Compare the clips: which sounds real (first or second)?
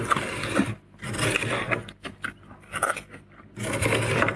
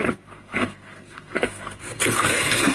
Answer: first